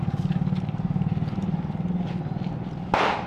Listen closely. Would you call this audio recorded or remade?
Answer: recorded